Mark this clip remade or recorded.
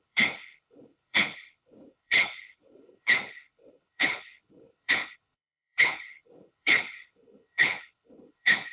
remade